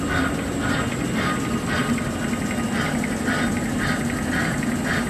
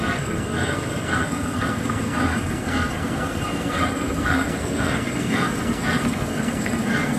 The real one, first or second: first